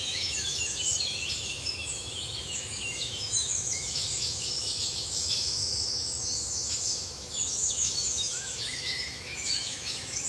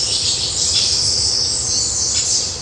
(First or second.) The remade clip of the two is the first